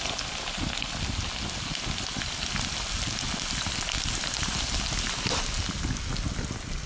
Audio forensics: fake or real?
real